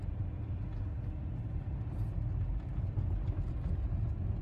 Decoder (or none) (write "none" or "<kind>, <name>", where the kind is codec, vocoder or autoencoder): none